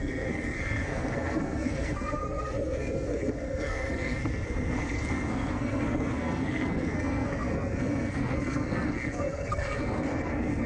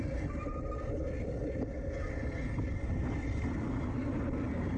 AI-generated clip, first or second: first